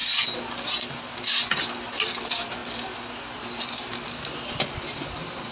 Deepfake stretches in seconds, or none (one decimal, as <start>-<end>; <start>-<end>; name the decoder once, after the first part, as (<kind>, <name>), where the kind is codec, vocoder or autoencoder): none